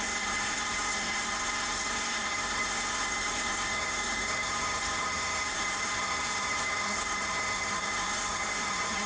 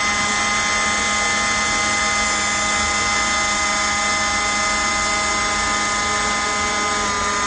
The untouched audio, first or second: second